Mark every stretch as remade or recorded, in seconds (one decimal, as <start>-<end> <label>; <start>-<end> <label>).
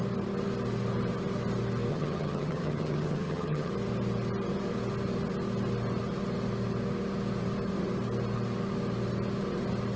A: 0.0-1.9 recorded; 1.9-3.7 remade; 3.7-10.0 recorded